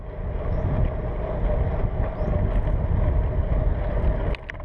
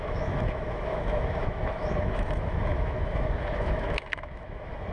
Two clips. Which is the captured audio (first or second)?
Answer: first